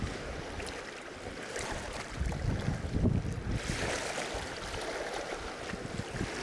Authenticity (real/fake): real